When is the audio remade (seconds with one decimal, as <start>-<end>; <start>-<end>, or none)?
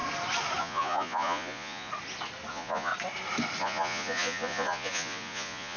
0.6-1.9; 2.5-2.9; 3.6-5.8